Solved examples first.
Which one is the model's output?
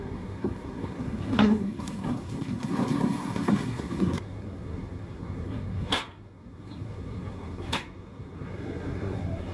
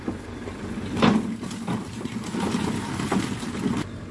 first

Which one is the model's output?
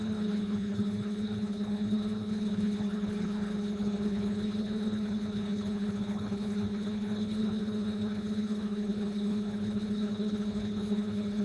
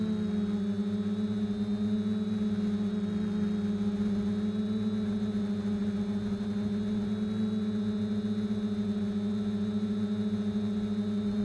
first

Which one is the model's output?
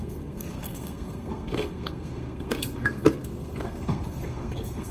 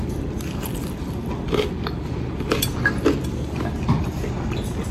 first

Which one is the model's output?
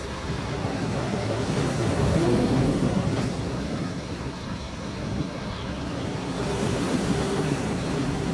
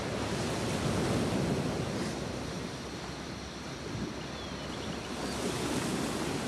first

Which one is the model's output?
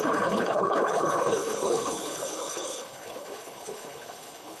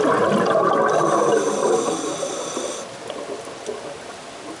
first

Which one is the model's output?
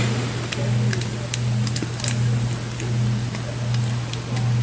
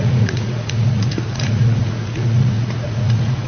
second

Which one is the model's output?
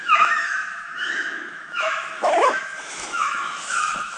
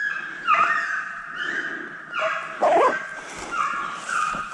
first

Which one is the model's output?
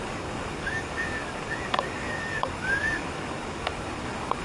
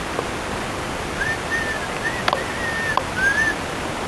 first